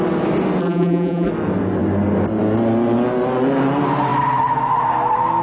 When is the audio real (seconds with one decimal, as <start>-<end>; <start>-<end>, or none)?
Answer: 0.0-0.6; 1.3-5.4